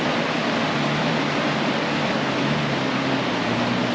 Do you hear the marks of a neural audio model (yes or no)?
no